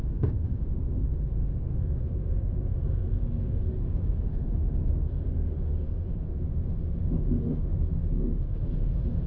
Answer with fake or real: fake